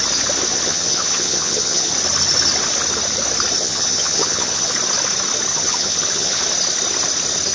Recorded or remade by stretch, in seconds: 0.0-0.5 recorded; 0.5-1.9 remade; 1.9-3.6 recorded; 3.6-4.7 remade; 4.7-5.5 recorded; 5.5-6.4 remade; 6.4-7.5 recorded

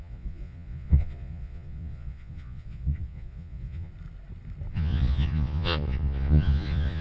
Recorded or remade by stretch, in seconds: 0.0-3.9 remade; 3.9-4.7 recorded; 4.7-7.0 remade

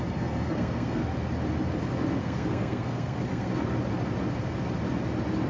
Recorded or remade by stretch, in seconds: 0.0-1.0 remade; 1.0-2.2 recorded; 2.2-3.5 remade; 3.5-5.5 recorded

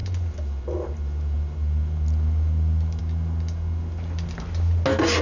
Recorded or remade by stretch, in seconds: 0.0-5.2 recorded

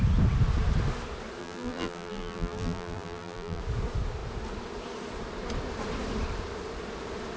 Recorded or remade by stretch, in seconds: 0.0-1.4 recorded; 1.4-3.6 remade; 3.6-7.4 recorded

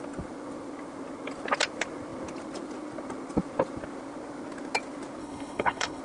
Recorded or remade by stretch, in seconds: 0.0-5.2 recorded; 5.2-6.0 remade

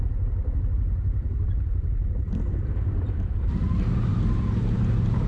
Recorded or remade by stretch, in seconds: 0.0-3.6 remade; 3.6-4.1 recorded; 4.1-5.3 remade

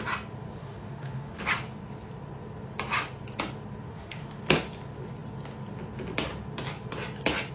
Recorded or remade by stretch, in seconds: 0.0-0.6 recorded; 0.6-1.4 remade; 1.4-3.9 recorded; 3.9-4.4 remade; 4.4-7.5 recorded